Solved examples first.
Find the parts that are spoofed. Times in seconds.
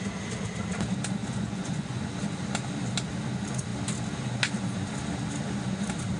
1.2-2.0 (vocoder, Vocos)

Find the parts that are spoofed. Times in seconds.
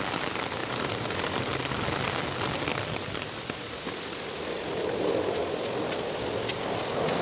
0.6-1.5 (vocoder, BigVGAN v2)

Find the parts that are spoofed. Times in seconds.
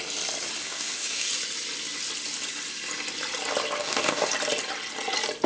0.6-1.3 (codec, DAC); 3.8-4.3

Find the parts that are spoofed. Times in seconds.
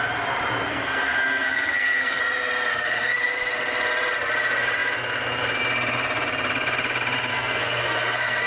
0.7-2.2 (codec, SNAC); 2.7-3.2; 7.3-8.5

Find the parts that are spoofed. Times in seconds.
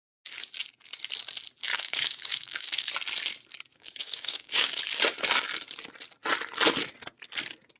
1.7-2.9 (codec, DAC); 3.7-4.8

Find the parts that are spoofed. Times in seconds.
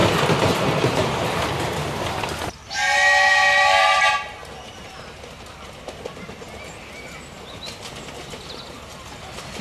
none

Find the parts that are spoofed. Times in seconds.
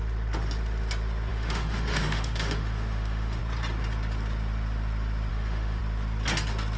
1.3-3.4 (autoencoder, DAC-VAE); 5.3-5.8